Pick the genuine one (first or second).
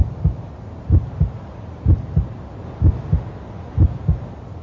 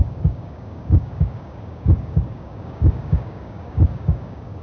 first